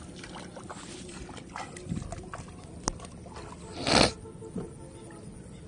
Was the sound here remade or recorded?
recorded